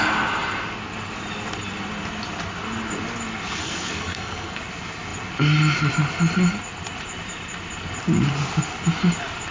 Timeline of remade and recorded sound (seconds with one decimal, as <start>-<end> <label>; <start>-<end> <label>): 0.0-3.6 recorded; 3.6-4.6 remade; 4.6-9.5 recorded